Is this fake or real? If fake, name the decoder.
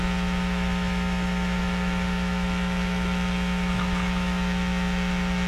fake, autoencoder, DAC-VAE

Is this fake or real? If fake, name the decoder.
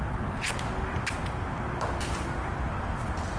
real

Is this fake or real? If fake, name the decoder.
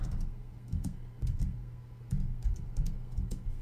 fake, codec, SNAC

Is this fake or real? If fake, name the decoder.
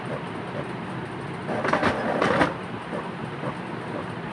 real